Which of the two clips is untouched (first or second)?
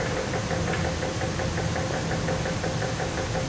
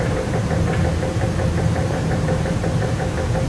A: first